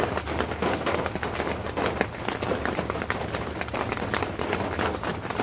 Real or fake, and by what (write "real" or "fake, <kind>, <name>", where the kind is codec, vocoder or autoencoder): real